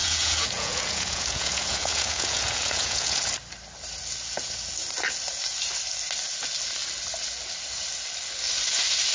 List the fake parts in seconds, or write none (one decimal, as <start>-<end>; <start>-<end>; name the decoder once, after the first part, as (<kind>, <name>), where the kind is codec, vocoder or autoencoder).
0.0-3.3 (vocoder, Vocos)